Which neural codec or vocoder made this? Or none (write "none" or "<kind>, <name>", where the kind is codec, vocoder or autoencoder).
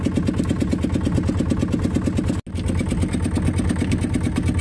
none